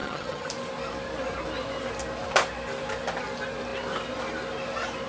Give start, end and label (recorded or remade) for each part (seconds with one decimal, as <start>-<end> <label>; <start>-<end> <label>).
0.0-0.5 remade; 0.5-5.1 recorded